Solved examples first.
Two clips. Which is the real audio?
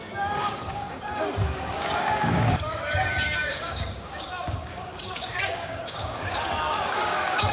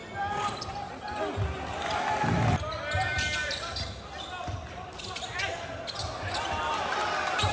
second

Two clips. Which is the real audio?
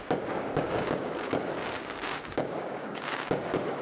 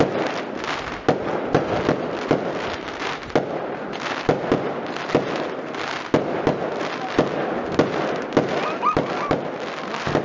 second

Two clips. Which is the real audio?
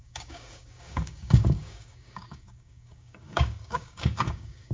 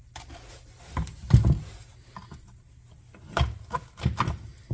second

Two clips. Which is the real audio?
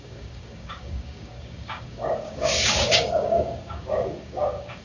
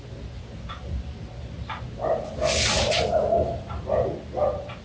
second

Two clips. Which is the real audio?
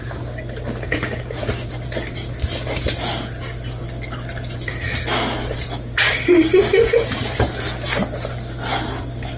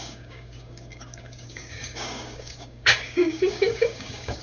first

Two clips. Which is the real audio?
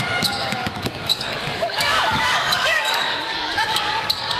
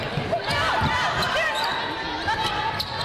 second